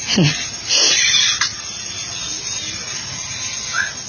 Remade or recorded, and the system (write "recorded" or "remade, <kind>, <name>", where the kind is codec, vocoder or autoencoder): recorded